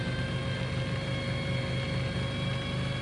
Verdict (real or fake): real